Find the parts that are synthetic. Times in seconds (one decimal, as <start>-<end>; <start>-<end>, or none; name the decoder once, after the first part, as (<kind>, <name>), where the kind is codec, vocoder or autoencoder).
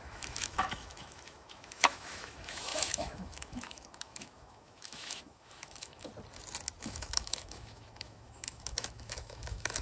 0.0-6.1 (autoencoder, DAC-VAE); 6.8-9.8